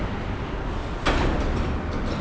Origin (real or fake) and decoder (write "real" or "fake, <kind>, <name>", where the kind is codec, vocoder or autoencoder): real